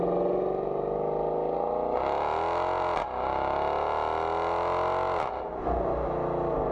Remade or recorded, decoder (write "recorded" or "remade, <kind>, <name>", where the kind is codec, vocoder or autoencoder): recorded